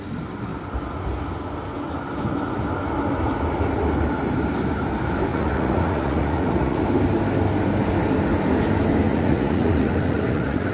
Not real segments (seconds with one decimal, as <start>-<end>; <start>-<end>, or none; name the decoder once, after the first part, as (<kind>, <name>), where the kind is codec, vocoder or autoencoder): 5.3-6.8 (vocoder, Vocos); 9.1-10.7